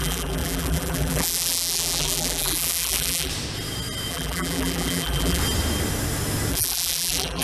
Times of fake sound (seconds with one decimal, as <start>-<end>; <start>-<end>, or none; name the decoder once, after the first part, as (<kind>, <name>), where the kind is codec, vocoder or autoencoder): 0.0-3.3 (vocoder, BigVGAN v2); 4.1-5.4; 6.5-7.4